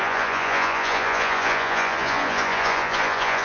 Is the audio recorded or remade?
remade